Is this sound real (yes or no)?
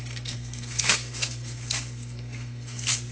no